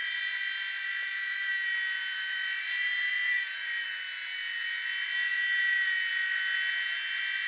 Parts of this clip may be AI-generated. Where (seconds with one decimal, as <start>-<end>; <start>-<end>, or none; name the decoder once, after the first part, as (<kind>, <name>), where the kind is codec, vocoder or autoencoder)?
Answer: 0.0-1.5 (vocoder, BigVGAN v2); 2.0-3.9